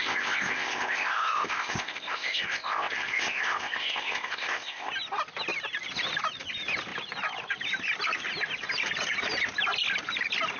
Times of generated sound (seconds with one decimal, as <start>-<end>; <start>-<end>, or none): 0.0-4.9